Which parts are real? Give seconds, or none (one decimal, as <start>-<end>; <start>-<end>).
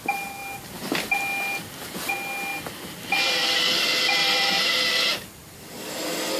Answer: 0.0-4.2; 4.8-6.4